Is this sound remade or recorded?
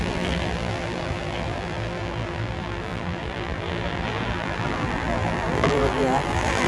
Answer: remade